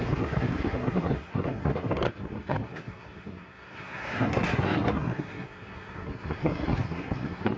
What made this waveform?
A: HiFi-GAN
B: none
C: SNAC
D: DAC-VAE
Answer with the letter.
C